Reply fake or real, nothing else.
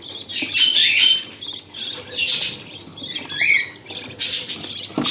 real